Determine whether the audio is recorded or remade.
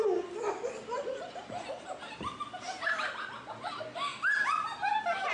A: recorded